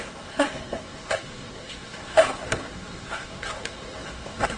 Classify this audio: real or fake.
fake